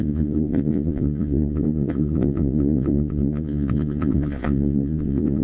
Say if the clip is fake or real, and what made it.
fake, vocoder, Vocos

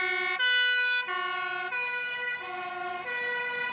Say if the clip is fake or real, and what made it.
real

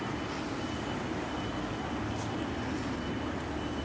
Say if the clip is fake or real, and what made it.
real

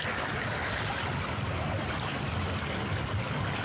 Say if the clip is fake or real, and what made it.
real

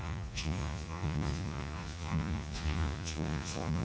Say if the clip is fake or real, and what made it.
fake, vocoder, Vocos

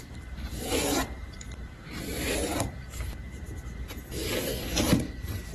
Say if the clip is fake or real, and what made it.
fake, vocoder, BigVGAN v2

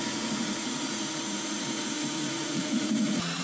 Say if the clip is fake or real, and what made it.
fake, vocoder, Vocos